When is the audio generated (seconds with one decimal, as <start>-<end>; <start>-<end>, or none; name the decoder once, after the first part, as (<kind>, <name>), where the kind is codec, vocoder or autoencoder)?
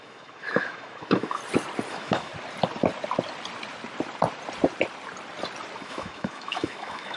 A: 0.0-1.4 (autoencoder, DAC-VAE); 1.9-2.3; 5.8-7.2